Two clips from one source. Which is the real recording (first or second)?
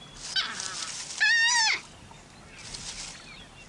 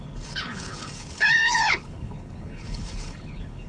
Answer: first